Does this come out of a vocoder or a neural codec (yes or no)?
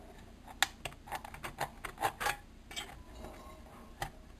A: no